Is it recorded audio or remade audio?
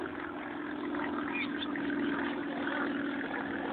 recorded